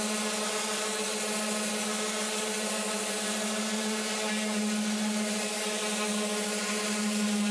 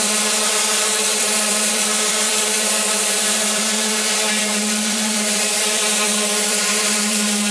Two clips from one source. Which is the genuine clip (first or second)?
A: first